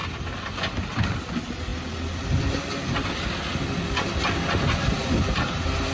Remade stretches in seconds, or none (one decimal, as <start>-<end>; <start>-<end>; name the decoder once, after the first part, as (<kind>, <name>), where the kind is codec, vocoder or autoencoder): none